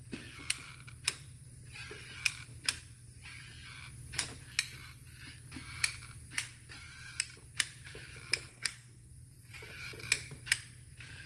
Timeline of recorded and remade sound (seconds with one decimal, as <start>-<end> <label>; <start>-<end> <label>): 0.0-8.5 recorded; 8.5-9.1 remade; 9.1-11.3 recorded

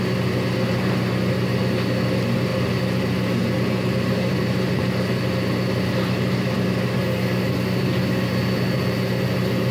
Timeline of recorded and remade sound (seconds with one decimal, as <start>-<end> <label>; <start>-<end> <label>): 0.0-9.7 recorded

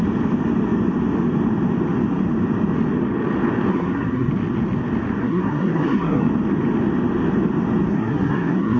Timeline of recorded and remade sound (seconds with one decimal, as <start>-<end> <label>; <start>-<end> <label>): 0.0-3.7 recorded; 3.7-4.3 remade; 4.3-5.2 recorded; 5.2-6.3 remade; 6.3-7.9 recorded; 7.9-8.8 remade

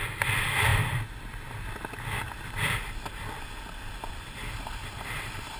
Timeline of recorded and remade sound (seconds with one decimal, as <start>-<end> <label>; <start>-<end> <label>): 0.0-5.6 recorded

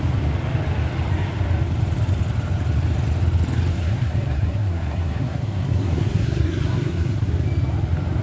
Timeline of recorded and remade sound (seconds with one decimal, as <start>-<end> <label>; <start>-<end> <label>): 0.0-3.7 recorded; 3.7-7.3 remade; 7.3-8.2 recorded

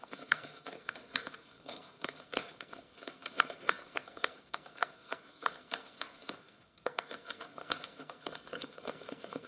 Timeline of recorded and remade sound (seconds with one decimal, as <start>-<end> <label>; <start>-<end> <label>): 0.0-9.5 remade

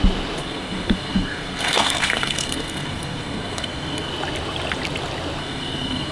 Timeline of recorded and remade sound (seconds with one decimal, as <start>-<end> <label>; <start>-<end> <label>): 0.0-0.4 recorded; 0.4-4.1 remade; 4.1-5.4 recorded; 5.4-6.1 remade

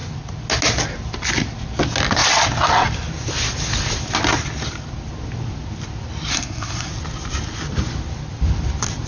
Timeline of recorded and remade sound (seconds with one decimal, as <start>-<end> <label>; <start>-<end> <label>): 0.0-6.3 recorded; 6.3-6.9 remade; 6.9-9.1 recorded